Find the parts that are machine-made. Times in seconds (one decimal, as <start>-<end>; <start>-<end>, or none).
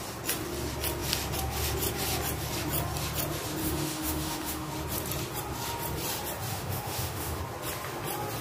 3.6-4.7; 6.5-7.4